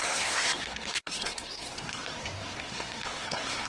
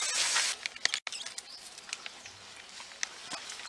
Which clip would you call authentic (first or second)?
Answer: second